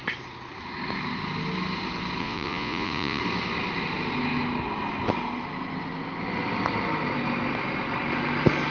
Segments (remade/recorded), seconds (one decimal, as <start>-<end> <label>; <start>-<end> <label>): 0.0-2.2 recorded; 2.2-3.2 remade; 3.2-8.7 recorded